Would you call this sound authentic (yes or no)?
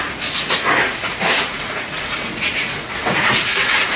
no